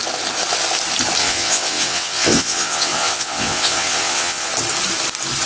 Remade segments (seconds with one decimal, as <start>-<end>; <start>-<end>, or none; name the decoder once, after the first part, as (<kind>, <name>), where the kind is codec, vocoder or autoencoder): 1.2-4.5 (vocoder, WaveNeXt)